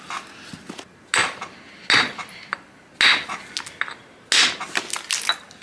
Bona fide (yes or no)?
yes